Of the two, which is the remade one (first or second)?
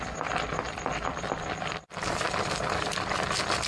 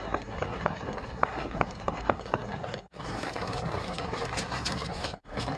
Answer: second